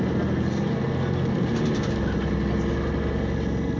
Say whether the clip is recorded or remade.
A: recorded